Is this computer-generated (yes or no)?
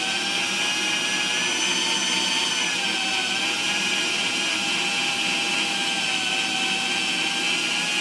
no